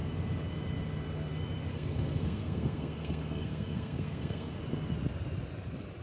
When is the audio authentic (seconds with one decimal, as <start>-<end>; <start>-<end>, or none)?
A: 0.0-1.7; 4.6-6.0